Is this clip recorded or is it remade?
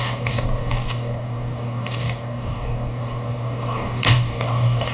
remade